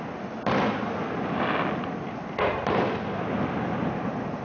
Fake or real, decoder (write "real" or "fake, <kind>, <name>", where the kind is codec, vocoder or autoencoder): real